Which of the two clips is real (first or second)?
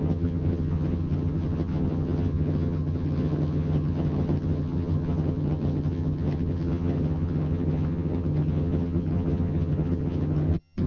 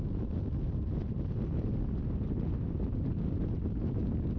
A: second